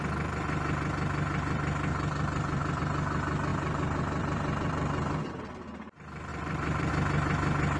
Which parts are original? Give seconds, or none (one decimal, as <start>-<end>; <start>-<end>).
0.0-1.9; 2.8-3.5; 5.2-6.3; 6.9-7.8